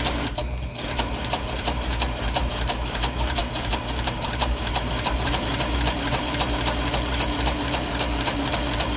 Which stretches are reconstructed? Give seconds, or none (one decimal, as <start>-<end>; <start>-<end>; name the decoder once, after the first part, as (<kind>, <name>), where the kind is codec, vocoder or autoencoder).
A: 0.0-9.0 (vocoder, BigVGAN v2)